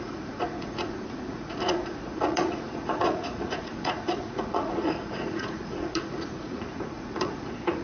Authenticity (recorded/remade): remade